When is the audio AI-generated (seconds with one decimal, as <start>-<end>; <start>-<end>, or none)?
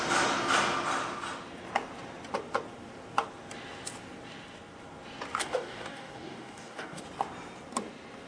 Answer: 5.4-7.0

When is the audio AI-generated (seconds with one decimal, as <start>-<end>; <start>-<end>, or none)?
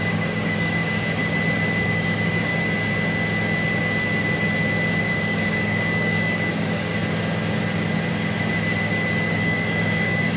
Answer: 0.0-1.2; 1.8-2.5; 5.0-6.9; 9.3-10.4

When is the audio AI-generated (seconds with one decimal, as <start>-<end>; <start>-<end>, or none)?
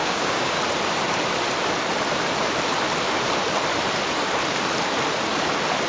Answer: 0.0-0.6